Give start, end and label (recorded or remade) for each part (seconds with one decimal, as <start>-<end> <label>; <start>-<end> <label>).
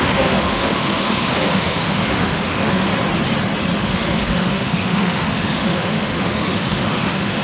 0.0-2.9 remade; 2.9-3.8 recorded; 3.8-7.4 remade